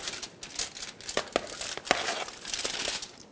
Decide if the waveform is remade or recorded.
recorded